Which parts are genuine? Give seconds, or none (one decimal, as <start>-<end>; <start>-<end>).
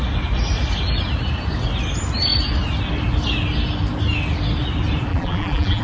0.0-5.1